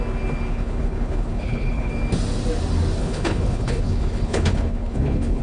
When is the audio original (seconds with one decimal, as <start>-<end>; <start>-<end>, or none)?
0.0-0.5; 1.9-3.0